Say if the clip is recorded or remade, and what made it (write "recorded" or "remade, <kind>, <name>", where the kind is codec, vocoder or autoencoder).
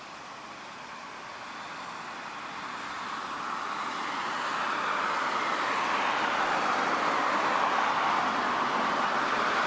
recorded